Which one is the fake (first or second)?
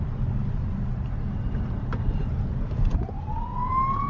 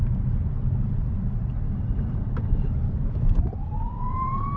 second